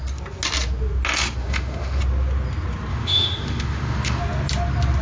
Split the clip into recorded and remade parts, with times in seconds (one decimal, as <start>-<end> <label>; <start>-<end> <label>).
0.0-1.4 recorded; 1.4-2.0 remade; 2.0-2.9 recorded; 2.9-4.2 remade; 4.2-5.0 recorded